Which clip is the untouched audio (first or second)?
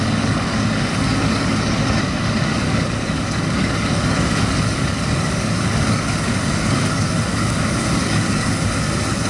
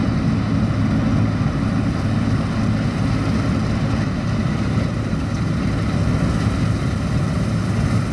second